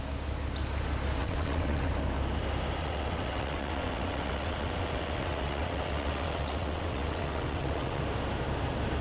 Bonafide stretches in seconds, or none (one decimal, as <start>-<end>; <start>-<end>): 0.0-1.2; 1.9-2.8; 8.0-9.0